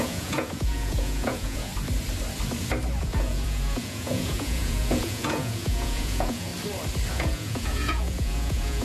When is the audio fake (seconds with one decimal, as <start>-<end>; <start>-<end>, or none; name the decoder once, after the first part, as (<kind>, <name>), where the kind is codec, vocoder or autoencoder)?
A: 0.0-1.7 (vocoder, Vocos); 3.0-6.5; 7.1-8.8